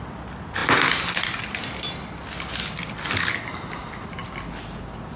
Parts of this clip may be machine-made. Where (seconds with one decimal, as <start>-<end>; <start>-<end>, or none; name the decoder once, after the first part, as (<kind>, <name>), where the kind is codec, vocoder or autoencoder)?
none